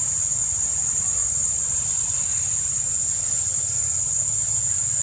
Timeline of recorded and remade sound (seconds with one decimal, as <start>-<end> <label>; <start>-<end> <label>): 0.0-5.0 recorded

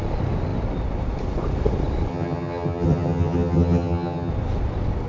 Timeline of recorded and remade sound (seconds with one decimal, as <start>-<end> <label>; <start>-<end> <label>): 0.0-2.1 recorded; 2.1-4.3 remade; 4.3-5.1 recorded

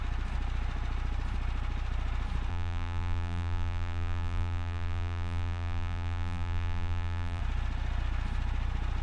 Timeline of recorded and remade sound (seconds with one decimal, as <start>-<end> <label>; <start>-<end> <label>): 0.0-2.5 recorded; 2.5-7.4 remade; 7.4-9.0 recorded

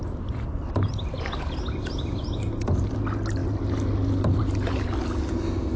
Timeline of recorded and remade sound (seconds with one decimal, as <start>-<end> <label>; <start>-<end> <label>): 0.0-5.8 recorded